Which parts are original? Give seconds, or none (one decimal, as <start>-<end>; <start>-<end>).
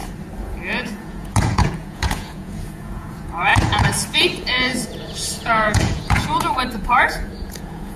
0.0-0.7